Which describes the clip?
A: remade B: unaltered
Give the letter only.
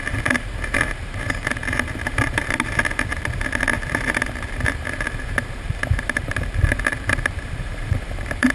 A